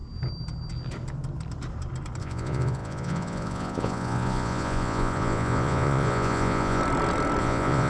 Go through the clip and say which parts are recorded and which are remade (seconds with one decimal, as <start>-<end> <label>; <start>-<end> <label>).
0.0-2.2 recorded; 2.2-6.8 remade; 6.8-7.4 recorded; 7.4-7.9 remade